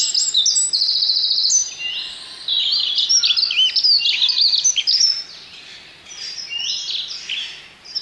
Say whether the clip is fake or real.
real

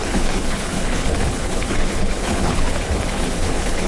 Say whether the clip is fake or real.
fake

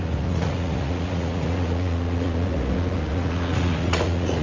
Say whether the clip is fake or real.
fake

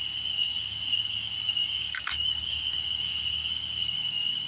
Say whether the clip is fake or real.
fake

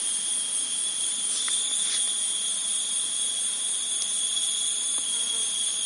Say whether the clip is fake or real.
real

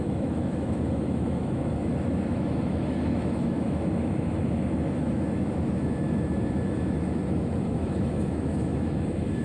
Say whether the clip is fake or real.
fake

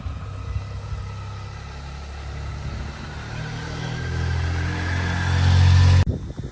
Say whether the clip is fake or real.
real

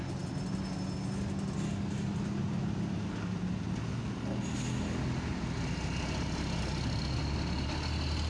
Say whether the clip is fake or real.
real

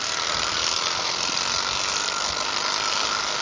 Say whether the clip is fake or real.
real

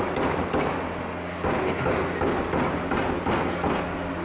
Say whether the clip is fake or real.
real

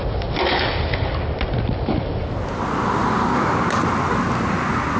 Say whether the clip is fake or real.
real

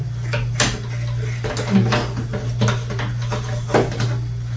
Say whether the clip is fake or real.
real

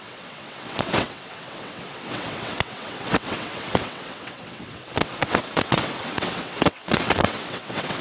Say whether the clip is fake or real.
fake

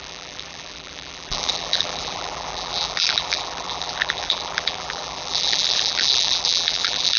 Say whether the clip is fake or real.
fake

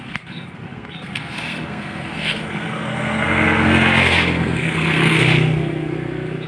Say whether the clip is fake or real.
fake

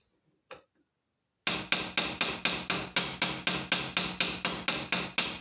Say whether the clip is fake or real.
real